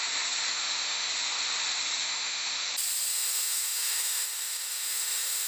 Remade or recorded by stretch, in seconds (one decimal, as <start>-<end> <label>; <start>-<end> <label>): 0.0-0.5 recorded; 0.5-1.1 remade; 1.1-2.0 recorded; 2.0-2.7 remade; 2.7-3.1 recorded; 3.1-5.5 remade